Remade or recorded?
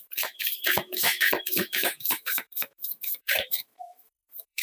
remade